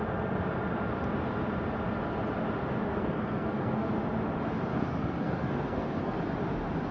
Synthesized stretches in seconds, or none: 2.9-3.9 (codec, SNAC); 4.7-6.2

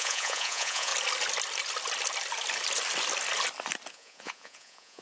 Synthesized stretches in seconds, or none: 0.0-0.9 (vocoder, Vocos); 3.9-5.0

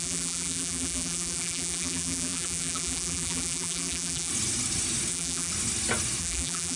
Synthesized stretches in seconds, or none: 0.0-4.3 (vocoder, BigVGAN v2); 5.1-5.5; 6.2-6.8